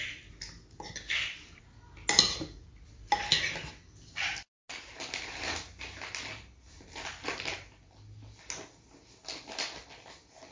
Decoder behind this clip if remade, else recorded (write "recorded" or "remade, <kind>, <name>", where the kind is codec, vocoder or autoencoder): recorded